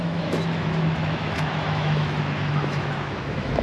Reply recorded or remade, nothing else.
remade